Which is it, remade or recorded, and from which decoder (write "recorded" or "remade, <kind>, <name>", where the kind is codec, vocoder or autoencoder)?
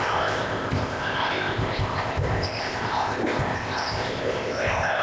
remade, codec, ZipCodec